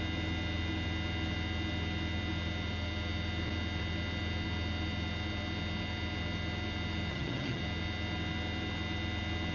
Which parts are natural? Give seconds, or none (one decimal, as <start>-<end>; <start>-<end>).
0.0-7.1; 7.6-9.5